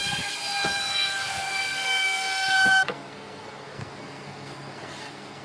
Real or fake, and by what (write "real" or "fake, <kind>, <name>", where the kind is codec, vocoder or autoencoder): fake, codec, SNAC